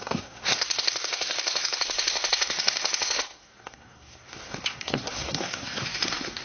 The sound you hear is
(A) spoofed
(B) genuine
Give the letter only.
A